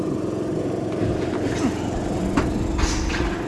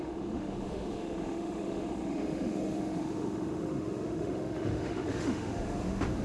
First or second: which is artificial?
second